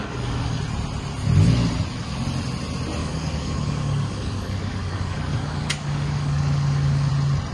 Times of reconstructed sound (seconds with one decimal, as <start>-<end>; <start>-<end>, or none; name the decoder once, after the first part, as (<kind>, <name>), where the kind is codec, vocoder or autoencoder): 0.0-0.6 (codec, DAC); 3.0-7.1